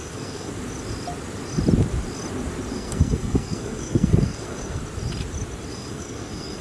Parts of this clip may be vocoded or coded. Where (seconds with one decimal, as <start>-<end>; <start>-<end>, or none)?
0.0-0.5; 2.7-4.8; 5.7-6.6